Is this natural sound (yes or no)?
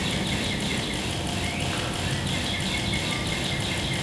yes